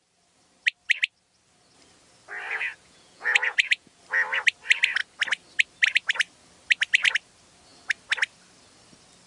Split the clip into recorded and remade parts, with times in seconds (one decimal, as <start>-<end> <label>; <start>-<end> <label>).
0.0-2.5 recorded; 2.5-4.0 remade; 4.0-9.3 recorded